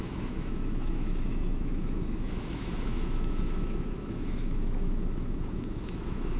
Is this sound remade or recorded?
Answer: remade